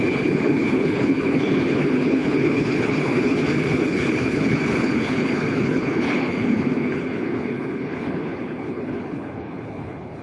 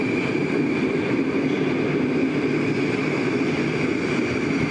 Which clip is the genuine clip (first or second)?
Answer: second